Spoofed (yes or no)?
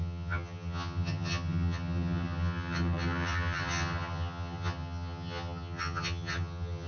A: yes